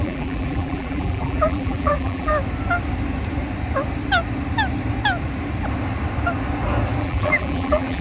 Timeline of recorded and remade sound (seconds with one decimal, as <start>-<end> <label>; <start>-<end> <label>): 0.0-2.3 remade; 2.3-7.0 recorded; 7.0-8.0 remade